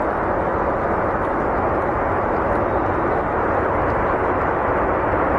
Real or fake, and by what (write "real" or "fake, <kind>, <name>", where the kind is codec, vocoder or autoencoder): real